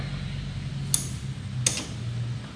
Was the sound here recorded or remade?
recorded